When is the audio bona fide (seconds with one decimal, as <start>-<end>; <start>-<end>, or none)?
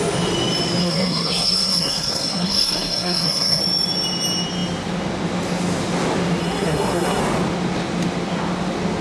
0.0-0.8; 3.6-6.4; 7.2-9.0